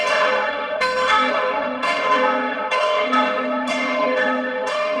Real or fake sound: fake